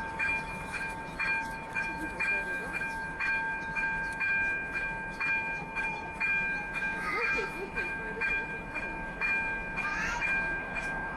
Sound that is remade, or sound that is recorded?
remade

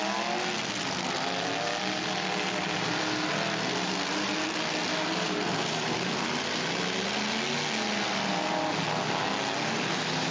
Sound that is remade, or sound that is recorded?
recorded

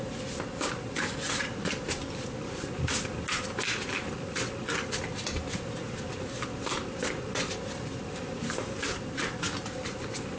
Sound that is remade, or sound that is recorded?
recorded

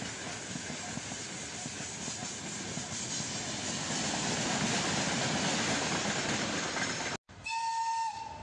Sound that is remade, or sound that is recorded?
recorded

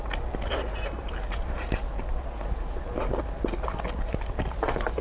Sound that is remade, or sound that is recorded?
recorded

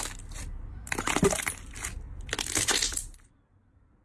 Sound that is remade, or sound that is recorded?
recorded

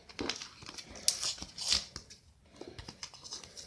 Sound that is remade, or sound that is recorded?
recorded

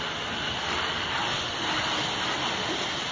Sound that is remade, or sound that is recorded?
recorded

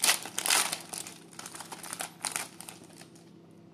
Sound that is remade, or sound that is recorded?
recorded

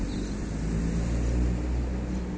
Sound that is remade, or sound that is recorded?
recorded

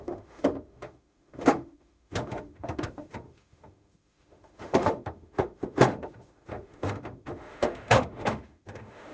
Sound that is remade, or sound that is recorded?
remade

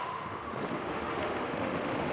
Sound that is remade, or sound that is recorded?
remade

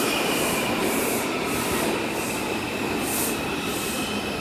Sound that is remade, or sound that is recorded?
recorded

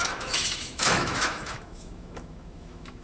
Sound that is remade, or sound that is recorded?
remade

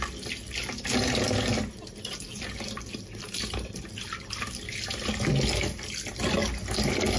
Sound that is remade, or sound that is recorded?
recorded